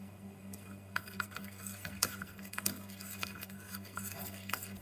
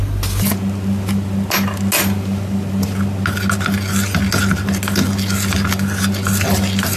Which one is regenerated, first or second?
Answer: first